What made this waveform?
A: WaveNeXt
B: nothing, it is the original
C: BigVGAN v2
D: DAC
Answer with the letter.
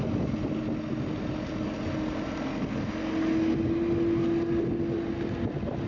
B